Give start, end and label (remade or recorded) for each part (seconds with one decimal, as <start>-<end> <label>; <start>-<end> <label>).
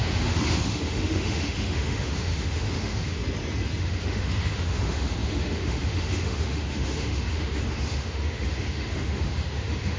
0.0-3.2 remade; 3.2-3.8 recorded; 3.8-10.0 remade